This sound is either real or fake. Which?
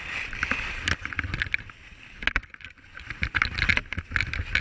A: real